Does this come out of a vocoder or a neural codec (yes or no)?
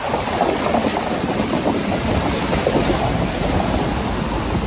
no